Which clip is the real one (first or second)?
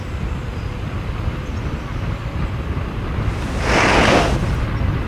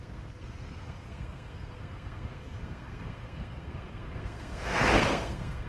first